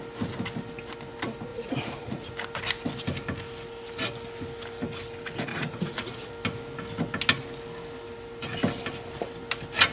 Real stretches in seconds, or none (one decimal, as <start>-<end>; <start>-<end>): 0.0-1.5; 2.3-5.5; 6.3-9.9